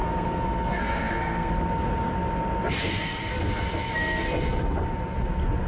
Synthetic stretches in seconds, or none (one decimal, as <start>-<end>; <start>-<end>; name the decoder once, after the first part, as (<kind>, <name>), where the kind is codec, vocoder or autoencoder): 0.0-1.5 (codec, SNAC)